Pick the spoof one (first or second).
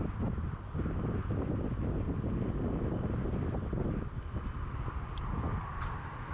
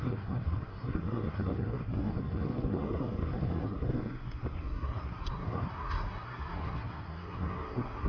second